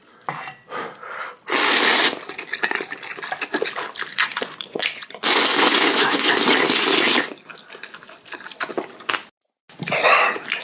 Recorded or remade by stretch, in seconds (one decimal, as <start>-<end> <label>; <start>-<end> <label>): 0.0-4.1 recorded; 4.1-6.3 remade; 6.3-10.6 recorded